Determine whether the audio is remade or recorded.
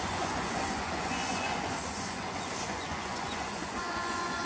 remade